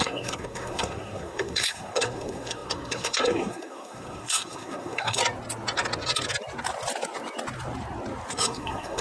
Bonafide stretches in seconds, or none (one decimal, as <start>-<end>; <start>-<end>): 5.2-8.3